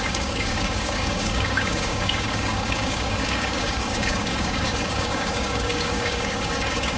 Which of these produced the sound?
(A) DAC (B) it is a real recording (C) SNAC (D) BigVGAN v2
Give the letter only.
A